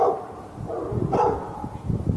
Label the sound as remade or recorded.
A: recorded